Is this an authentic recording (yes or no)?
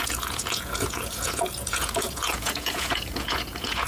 no